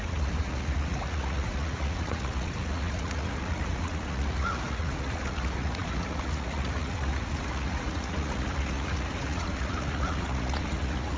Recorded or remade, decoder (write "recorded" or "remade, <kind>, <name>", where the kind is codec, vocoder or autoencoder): remade, vocoder, Vocos